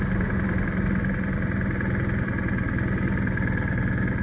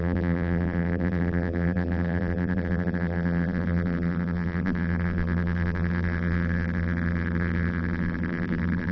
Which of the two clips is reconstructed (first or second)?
second